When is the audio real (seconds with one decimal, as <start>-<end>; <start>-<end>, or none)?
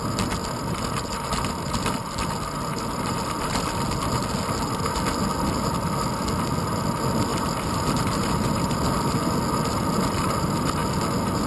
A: 0.0-7.3; 9.1-11.5